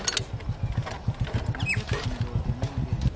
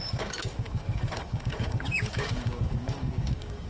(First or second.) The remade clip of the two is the second